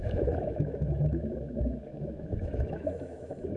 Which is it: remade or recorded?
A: remade